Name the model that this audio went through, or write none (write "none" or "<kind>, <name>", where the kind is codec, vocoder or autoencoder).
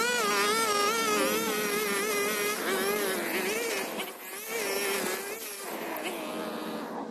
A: none